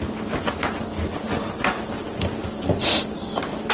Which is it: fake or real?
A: real